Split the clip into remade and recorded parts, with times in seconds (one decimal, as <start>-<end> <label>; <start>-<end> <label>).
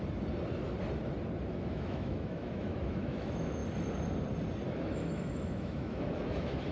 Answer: 0.0-1.5 recorded; 1.5-3.6 remade; 3.6-4.7 recorded; 4.7-6.7 remade